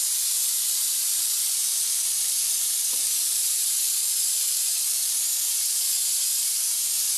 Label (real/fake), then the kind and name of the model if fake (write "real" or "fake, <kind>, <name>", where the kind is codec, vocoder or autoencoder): fake, vocoder, BigVGAN v2